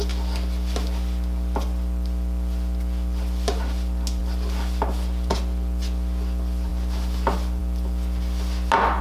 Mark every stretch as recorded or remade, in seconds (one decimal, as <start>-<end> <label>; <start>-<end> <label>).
0.0-9.0 recorded